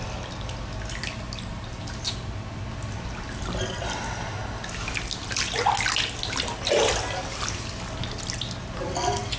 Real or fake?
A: real